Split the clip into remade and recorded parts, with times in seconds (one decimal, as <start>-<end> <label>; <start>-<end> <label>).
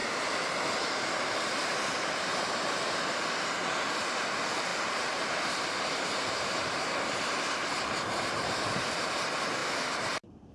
0.0-2.3 recorded; 2.3-3.0 remade; 3.0-4.7 recorded; 4.7-9.1 remade; 9.1-9.6 recorded; 9.6-10.5 remade